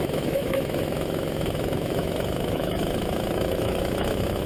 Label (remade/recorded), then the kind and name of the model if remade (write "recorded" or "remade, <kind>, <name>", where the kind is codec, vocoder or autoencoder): remade, autoencoder, DAC-VAE